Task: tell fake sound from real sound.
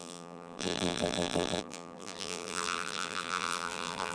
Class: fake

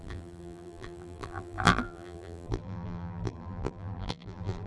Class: fake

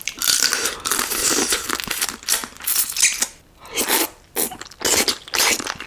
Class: real